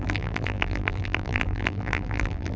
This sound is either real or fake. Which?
fake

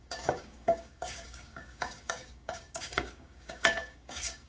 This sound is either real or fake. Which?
fake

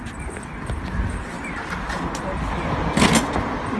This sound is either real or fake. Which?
real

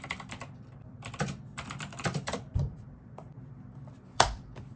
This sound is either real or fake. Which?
fake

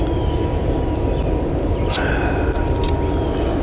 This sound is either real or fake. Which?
real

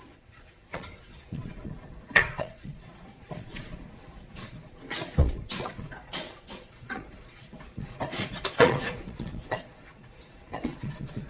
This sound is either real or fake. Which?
fake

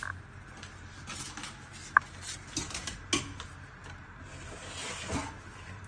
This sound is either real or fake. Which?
real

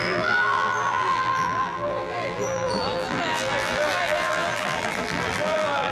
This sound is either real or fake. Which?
fake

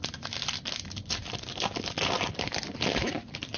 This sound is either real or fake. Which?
real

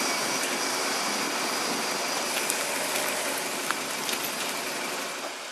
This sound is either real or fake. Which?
real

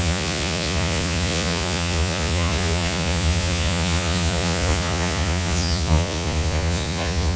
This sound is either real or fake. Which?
fake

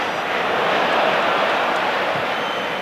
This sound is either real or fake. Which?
real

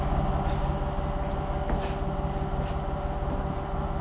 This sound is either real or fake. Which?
real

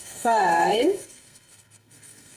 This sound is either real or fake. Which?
fake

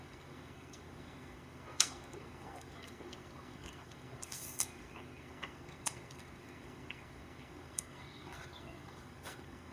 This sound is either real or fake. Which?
fake